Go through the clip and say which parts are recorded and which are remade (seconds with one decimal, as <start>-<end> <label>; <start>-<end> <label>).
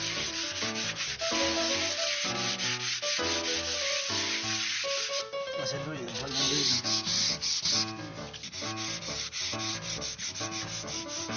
0.0-2.7 remade; 2.7-5.1 recorded; 5.1-6.1 remade; 6.1-9.0 recorded; 9.0-11.4 remade